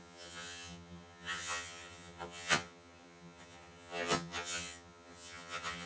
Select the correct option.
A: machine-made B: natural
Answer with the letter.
A